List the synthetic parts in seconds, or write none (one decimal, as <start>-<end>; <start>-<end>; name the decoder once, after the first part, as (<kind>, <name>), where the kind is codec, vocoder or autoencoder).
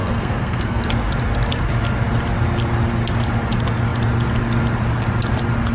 0.0-0.9 (codec, SNAC)